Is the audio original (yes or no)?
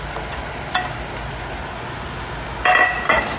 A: yes